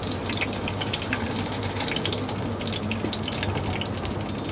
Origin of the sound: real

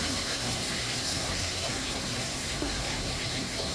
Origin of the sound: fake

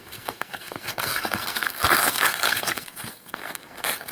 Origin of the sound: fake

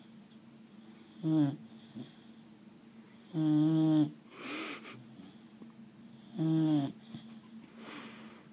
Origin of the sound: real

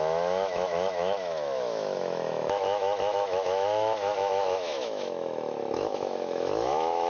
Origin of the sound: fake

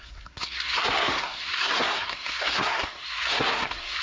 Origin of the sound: fake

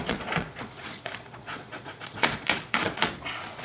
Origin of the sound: fake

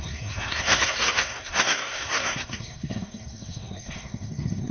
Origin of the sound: fake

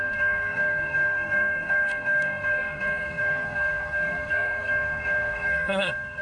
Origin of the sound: fake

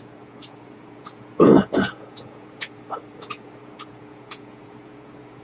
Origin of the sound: fake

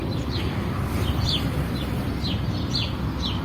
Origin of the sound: real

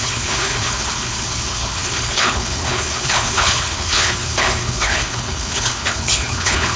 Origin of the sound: fake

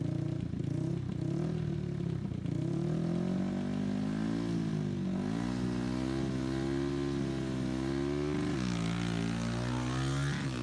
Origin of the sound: real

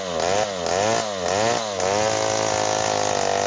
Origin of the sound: real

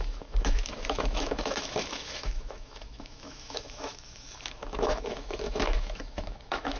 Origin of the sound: fake